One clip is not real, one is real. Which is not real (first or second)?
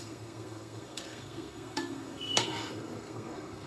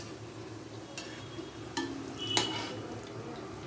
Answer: first